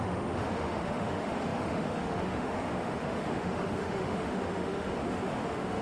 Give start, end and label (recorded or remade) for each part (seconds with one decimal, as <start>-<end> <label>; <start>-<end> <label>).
0.0-5.8 remade